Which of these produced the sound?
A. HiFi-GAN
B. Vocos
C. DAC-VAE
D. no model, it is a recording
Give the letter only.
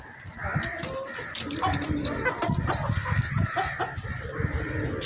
D